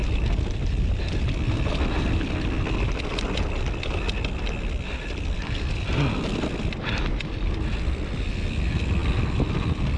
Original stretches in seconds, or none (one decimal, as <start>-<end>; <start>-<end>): 0.0-10.0